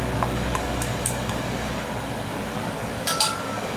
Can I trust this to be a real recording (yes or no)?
no